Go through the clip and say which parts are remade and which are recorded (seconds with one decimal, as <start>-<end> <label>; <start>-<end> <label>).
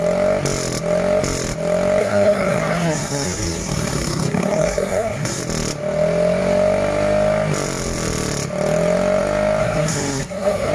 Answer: 0.0-2.0 recorded; 2.0-5.4 remade; 5.4-9.6 recorded; 9.6-10.7 remade